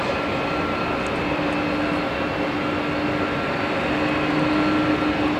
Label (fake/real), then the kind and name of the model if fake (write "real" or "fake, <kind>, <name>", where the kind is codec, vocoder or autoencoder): real